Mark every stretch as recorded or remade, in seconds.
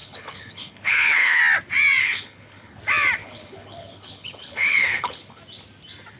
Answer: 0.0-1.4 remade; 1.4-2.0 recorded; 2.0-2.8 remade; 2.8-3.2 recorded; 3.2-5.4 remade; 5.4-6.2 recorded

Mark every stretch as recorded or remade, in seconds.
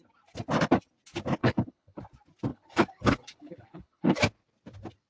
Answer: 0.0-1.4 recorded; 1.4-2.0 remade; 2.0-2.5 recorded; 2.5-4.2 remade; 4.2-5.1 recorded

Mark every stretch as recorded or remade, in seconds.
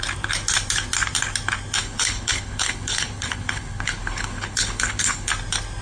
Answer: 0.0-1.8 recorded; 1.8-5.3 remade; 5.3-5.8 recorded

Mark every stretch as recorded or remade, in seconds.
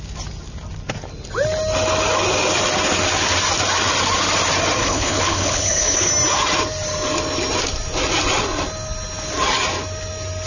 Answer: 0.0-4.8 recorded; 4.8-6.1 remade; 6.1-10.5 recorded